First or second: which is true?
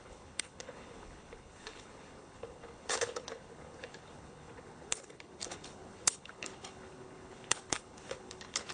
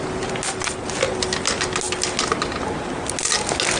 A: second